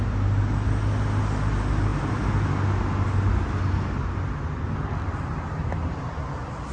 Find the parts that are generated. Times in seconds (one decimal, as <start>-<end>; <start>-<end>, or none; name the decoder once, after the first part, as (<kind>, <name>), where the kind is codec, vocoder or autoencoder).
none